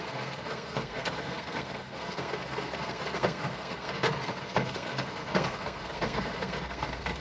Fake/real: fake